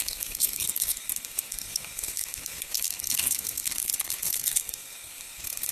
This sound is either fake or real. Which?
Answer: fake